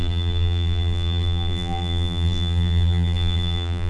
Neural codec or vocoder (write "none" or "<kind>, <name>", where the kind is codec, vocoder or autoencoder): vocoder, BigVGAN v2